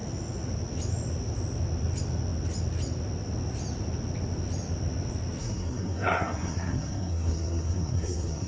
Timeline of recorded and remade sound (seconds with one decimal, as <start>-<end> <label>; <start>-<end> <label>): 0.0-5.4 recorded; 5.4-8.5 remade